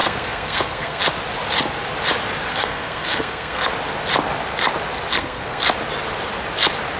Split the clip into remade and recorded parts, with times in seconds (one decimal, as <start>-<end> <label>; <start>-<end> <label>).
0.0-1.0 remade; 1.0-2.5 recorded; 2.5-3.7 remade; 3.7-5.1 recorded; 5.1-5.6 remade; 5.6-7.0 recorded